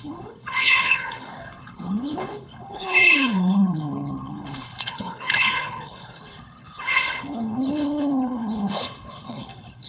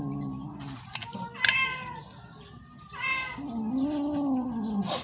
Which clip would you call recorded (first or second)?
second